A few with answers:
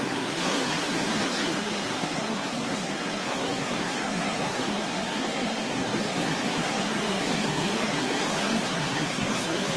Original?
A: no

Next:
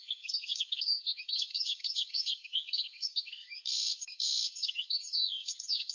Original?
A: no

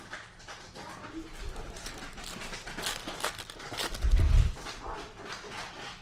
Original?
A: yes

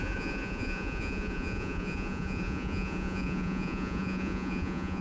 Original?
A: no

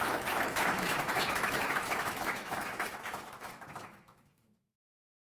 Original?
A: no